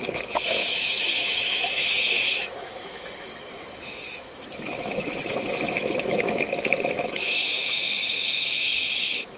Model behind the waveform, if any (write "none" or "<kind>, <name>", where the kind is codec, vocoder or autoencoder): autoencoder, DAC-VAE